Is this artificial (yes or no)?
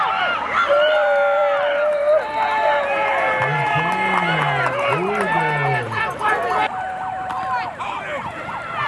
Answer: no